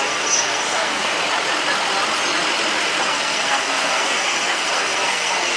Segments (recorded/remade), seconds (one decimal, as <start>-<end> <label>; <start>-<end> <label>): 0.0-1.1 remade; 1.1-3.0 recorded; 3.0-5.6 remade

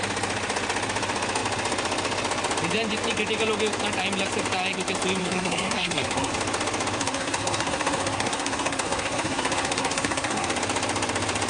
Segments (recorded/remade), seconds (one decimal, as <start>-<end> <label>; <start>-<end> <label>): 0.0-5.2 recorded; 5.2-6.3 remade; 6.3-7.0 recorded; 7.0-10.5 remade; 10.5-11.5 recorded

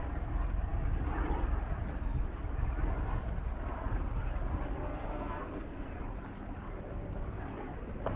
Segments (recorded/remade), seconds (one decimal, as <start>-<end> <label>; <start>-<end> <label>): 0.0-4.9 recorded; 4.9-6.0 remade; 6.0-8.2 recorded

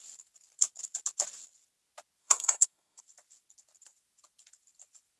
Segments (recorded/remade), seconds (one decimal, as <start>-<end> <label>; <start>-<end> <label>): 0.0-2.2 recorded; 2.2-3.0 remade; 3.0-5.2 recorded

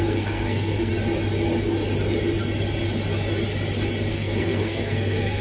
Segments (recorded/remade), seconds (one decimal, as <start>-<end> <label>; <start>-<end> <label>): 0.0-0.9 remade; 0.9-4.1 recorded; 4.1-5.4 remade